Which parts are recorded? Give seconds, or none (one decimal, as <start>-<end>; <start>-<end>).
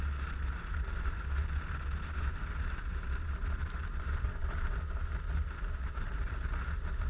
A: 1.4-2.2